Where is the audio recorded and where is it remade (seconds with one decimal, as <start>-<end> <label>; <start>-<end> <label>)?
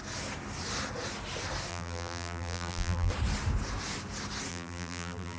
0.0-1.7 recorded; 1.7-3.1 remade; 3.1-4.5 recorded; 4.5-5.4 remade